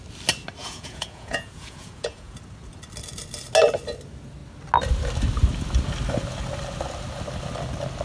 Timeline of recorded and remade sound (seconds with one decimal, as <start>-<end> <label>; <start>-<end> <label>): 0.0-0.6 recorded; 0.6-2.4 remade; 2.4-8.0 recorded